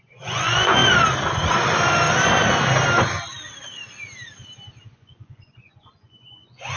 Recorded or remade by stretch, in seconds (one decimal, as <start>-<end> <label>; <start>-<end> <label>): 0.0-0.8 remade; 0.8-4.9 recorded; 4.9-6.8 remade